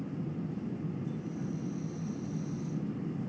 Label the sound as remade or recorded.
recorded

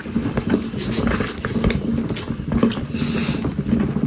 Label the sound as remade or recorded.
recorded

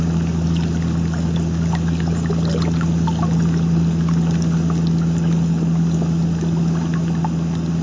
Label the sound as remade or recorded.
recorded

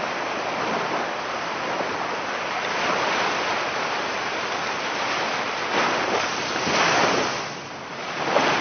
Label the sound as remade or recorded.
recorded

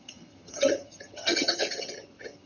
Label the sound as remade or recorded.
remade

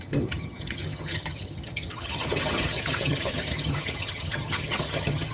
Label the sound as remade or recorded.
remade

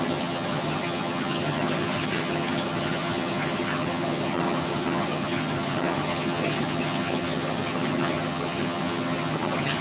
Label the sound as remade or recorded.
remade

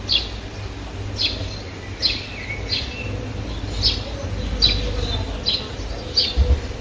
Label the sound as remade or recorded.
recorded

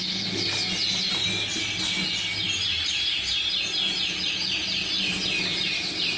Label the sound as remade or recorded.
recorded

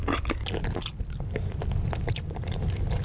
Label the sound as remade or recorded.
recorded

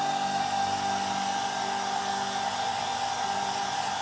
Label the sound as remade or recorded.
recorded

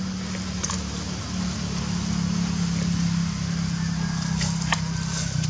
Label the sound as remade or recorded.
recorded